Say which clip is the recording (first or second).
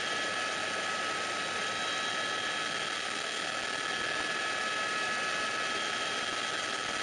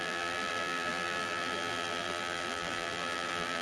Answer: first